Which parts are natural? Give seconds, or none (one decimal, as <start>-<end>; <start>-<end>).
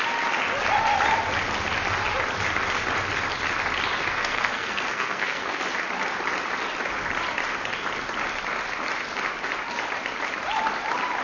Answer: 0.0-4.1; 5.6-11.2